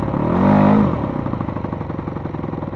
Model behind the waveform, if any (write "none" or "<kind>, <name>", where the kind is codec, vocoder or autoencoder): none